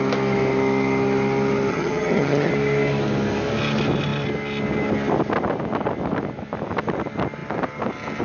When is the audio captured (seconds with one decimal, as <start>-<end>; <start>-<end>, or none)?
0.0-1.7; 2.5-8.2